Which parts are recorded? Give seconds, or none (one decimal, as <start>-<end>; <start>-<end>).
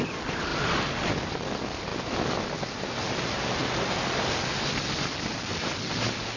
0.0-6.4